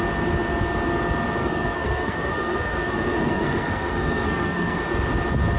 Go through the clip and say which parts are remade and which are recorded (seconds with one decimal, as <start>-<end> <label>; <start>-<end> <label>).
0.0-1.4 recorded; 1.4-4.8 remade; 4.8-5.6 recorded